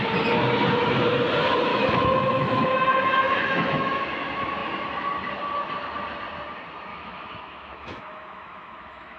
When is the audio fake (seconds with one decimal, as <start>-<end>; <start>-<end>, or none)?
1.7-4.0; 6.9-9.2